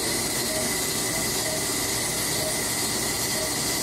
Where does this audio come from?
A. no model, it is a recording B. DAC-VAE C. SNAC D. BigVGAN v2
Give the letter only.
A